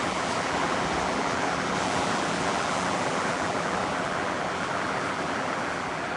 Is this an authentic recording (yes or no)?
no